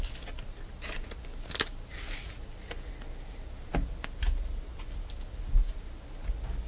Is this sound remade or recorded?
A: recorded